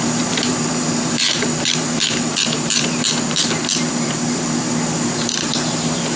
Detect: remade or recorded remade